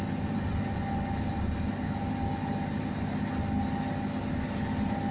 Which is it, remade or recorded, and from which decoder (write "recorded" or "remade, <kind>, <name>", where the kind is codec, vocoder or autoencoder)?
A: recorded